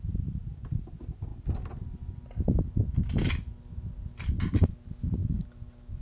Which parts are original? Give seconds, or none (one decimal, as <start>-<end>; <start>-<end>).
0.0-6.0